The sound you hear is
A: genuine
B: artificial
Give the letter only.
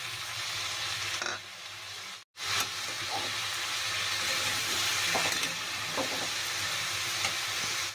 A